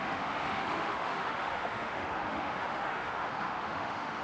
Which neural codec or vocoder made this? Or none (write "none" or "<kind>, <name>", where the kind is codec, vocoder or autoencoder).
autoencoder, DAC-VAE